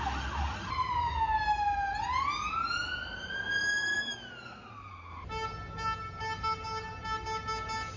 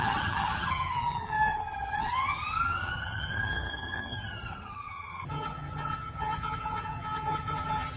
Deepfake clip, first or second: second